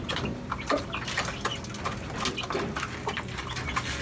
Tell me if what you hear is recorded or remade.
recorded